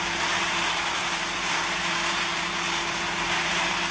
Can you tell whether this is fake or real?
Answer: real